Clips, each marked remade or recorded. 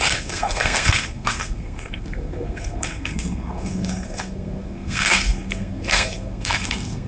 remade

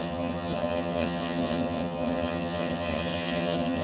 remade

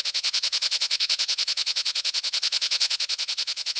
remade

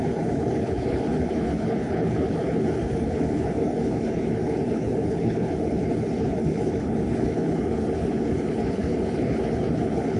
remade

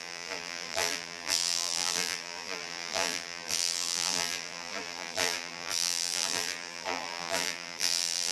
remade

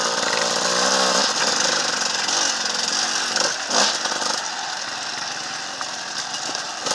recorded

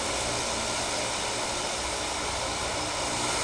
recorded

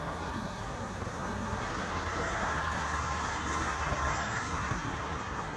remade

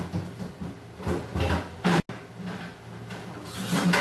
recorded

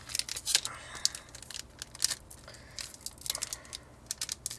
recorded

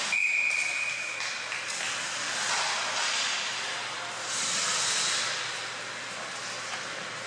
recorded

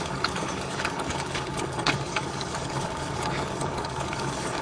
remade